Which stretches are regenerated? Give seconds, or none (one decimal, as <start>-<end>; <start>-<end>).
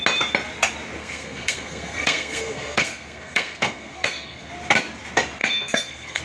1.0-4.5; 5.4-6.2